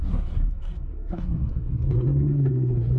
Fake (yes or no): yes